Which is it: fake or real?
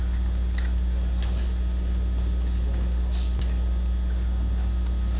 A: real